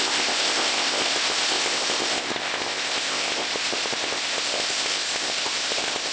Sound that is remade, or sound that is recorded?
remade